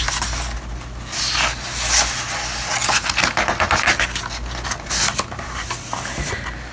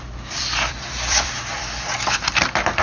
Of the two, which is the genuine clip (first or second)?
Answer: first